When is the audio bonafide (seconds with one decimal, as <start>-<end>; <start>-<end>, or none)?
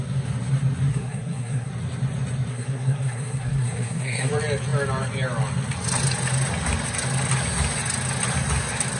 0.0-0.9; 1.7-2.5; 4.3-9.0